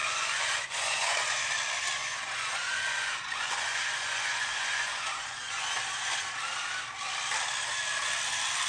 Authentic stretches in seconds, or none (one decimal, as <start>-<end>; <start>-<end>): 1.5-2.0; 6.2-8.7